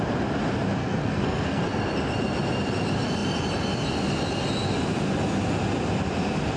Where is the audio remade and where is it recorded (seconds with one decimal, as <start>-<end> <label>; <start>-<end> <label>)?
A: 0.0-0.8 recorded; 0.8-1.6 remade; 1.6-6.6 recorded